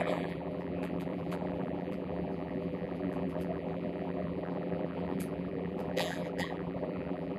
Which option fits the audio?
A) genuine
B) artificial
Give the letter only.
B